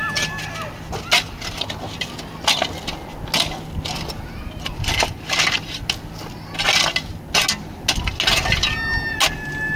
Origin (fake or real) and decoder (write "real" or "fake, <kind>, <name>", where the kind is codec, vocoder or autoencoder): real